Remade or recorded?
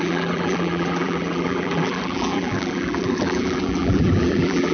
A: remade